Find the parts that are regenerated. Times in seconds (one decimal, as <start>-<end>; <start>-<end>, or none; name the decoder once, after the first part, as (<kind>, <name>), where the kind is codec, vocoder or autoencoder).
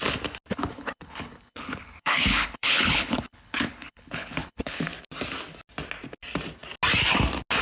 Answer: 0.5-4.9 (codec, HILCodec)